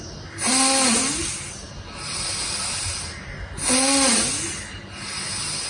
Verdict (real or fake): real